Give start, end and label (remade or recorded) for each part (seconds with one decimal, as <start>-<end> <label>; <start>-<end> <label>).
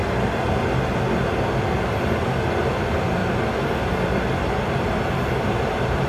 0.0-2.7 recorded; 2.7-3.2 remade; 3.2-4.4 recorded; 4.4-6.1 remade